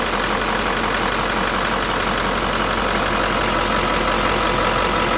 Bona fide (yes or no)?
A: yes